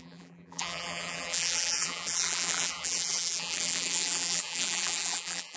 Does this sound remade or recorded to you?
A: remade